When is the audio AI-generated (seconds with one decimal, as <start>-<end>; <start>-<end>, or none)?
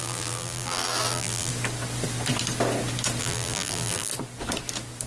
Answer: 0.0-1.5; 3.2-4.1